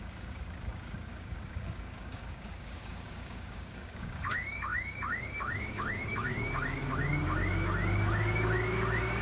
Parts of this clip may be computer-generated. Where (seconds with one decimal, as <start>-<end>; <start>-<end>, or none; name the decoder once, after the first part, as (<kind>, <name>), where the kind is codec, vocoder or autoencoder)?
0.0-9.2 (codec, DAC)